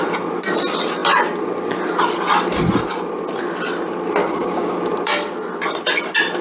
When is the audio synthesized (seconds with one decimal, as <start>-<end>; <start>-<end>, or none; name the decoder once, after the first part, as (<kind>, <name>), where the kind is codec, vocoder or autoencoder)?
4.2-4.7 (codec, DAC)